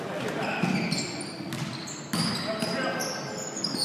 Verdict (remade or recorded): recorded